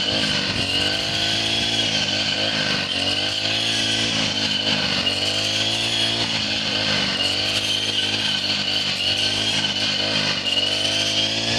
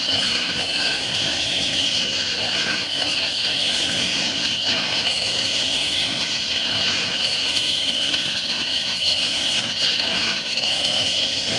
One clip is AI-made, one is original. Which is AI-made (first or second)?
second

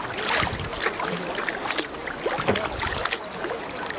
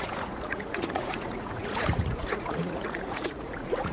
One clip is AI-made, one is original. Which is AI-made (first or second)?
second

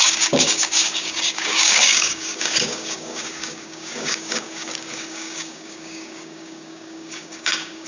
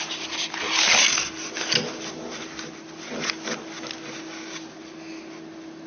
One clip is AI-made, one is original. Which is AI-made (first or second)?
first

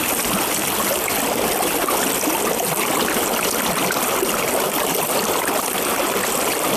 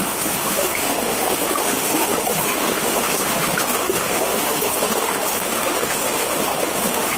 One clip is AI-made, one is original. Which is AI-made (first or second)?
second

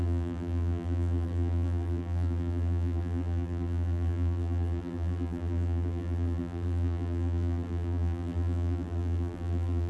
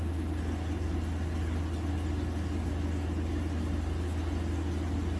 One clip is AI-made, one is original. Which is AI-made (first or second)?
first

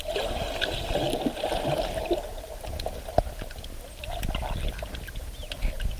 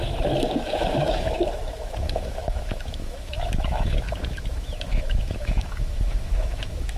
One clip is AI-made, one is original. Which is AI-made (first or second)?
second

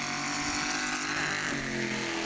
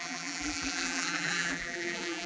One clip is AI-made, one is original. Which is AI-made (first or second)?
second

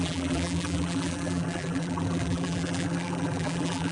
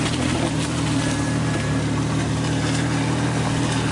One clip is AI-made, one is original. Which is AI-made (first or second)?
first